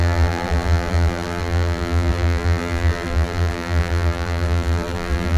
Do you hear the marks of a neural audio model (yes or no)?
yes